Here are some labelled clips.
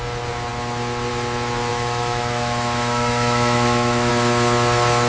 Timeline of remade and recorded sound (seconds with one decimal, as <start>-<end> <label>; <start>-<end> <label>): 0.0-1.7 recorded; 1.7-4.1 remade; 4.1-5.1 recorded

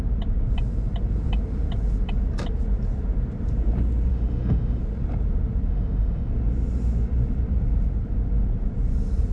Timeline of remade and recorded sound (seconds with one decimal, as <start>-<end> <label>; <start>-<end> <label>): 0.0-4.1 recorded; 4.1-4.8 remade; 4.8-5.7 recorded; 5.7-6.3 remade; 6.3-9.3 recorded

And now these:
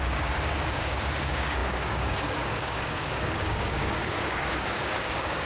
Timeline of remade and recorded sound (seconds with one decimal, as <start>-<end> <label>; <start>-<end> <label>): 0.0-5.5 remade

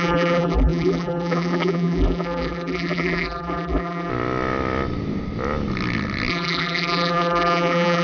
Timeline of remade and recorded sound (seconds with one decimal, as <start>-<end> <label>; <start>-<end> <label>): 0.0-4.1 remade; 4.1-6.3 recorded; 6.3-8.0 remade